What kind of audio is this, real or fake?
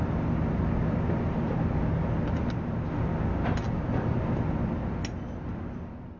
real